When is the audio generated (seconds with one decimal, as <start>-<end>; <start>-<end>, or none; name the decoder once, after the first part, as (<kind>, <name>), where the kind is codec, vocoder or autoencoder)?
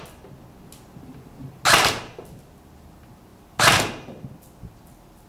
none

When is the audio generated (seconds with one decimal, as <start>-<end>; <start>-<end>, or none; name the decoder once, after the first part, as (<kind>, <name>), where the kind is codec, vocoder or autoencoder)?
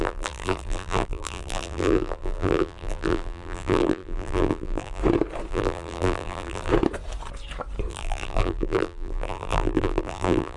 0.0-5.0 (vocoder, BigVGAN v2); 5.5-6.7; 7.9-10.6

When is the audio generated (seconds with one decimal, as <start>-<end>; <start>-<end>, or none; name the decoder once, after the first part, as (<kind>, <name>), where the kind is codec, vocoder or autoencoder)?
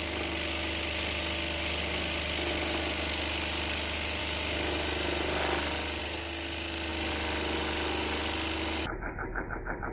none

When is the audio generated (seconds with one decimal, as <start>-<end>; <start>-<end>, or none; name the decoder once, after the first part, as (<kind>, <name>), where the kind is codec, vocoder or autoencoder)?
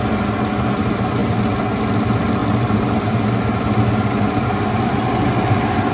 none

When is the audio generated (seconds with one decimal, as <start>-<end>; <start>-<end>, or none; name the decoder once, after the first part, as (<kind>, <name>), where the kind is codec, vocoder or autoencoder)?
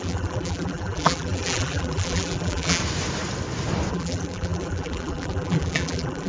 0.0-2.8 (vocoder, BigVGAN v2); 3.9-6.3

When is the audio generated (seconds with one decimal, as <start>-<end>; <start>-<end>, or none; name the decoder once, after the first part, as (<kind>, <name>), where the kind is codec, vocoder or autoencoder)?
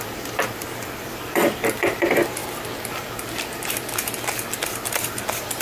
0.0-2.4 (vocoder, BigVGAN v2); 4.9-5.6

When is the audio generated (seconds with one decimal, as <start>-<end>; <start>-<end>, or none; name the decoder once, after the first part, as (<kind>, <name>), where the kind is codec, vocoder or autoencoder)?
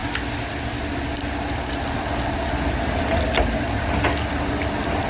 none